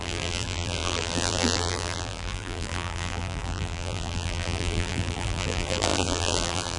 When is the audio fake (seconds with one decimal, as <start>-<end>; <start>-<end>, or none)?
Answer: 0.0-6.8